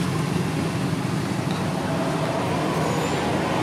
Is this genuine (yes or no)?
yes